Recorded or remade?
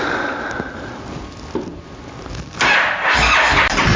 recorded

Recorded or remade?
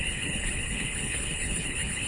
remade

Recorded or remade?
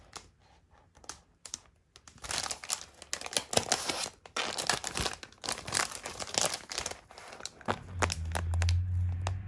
recorded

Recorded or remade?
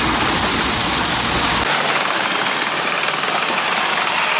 recorded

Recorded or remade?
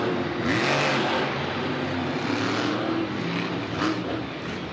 recorded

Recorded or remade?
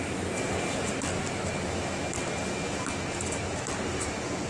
recorded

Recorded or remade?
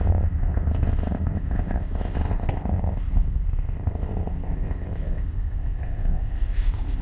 remade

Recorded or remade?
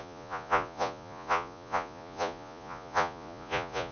remade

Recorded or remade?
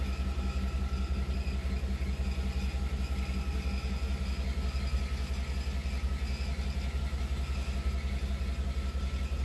recorded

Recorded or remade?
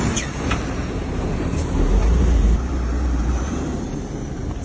remade